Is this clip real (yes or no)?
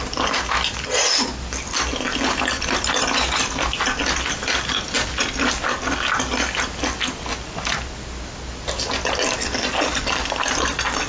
yes